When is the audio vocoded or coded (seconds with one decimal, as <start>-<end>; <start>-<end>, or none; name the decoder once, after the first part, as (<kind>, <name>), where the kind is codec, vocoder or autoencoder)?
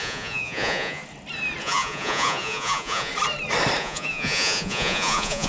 0.0-1.0 (vocoder, Vocos); 1.6-3.1; 3.8-5.5